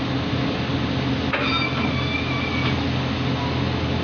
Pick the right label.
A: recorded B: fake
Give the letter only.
A